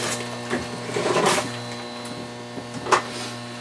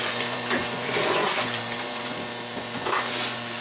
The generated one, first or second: second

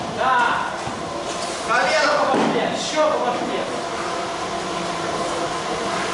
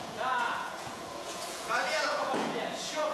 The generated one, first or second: second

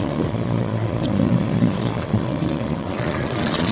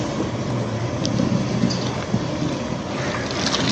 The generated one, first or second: first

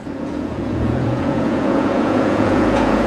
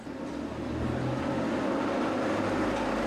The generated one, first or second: first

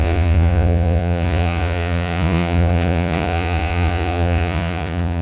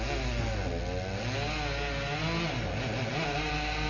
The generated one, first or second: first